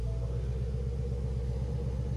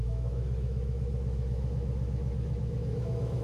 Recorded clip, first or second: first